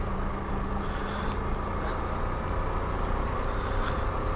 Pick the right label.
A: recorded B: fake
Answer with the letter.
A